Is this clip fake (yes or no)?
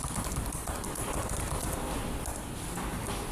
no